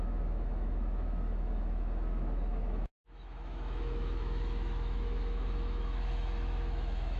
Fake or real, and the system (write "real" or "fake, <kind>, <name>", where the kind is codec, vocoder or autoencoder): fake, autoencoder, DAC-VAE